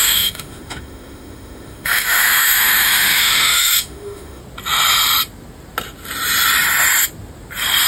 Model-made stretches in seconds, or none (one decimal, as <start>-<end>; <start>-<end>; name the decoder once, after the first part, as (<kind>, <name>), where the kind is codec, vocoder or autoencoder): 0.0-4.4 (autoencoder, DAC-VAE)